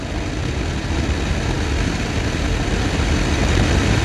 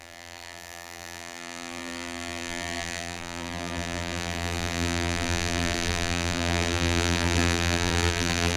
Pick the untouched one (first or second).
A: first